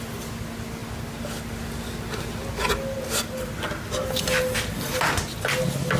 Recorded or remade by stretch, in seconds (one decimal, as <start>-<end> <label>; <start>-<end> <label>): 0.0-6.0 recorded

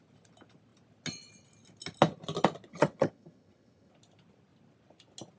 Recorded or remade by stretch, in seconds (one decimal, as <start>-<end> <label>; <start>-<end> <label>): 0.0-2.7 recorded; 2.7-3.9 remade; 3.9-5.4 recorded

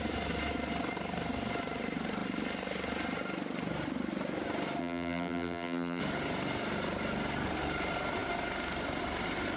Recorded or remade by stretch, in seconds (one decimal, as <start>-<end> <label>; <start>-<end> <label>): 0.0-4.8 recorded; 4.8-6.0 remade; 6.0-9.6 recorded

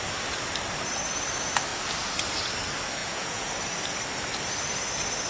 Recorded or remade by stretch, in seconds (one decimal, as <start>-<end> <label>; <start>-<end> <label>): 0.0-3.0 recorded; 3.0-3.5 remade; 3.5-5.3 recorded

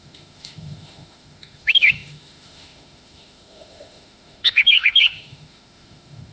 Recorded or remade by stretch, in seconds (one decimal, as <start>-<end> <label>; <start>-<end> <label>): 0.0-6.3 remade